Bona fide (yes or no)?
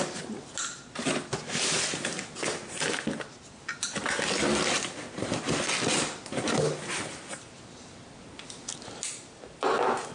yes